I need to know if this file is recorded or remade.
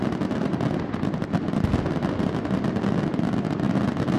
recorded